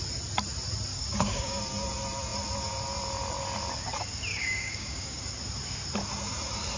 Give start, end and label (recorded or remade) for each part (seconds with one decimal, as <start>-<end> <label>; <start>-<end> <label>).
0.0-0.9 recorded; 0.9-1.6 remade; 1.6-4.3 recorded; 4.3-5.2 remade; 5.2-6.8 recorded